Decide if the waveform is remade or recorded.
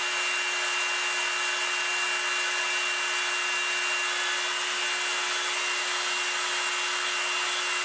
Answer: recorded